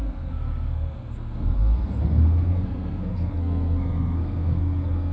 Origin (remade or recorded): remade